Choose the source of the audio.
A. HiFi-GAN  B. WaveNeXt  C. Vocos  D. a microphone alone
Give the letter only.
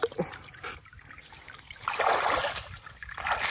D